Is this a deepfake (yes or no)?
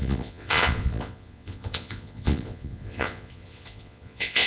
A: yes